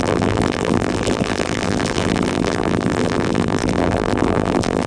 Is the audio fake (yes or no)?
yes